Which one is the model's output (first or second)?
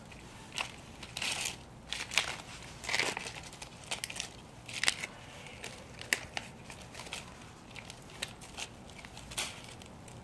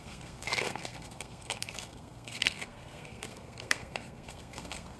second